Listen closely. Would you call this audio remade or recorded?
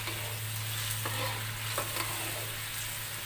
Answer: recorded